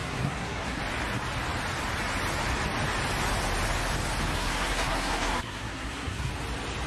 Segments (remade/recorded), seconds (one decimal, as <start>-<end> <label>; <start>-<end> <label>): 0.0-0.8 remade; 0.8-4.3 recorded; 4.3-6.3 remade; 6.3-6.9 recorded